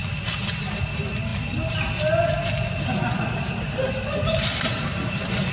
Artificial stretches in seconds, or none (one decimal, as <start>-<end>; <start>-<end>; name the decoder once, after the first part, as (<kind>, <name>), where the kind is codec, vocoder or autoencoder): none